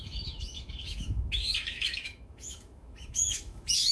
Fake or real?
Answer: fake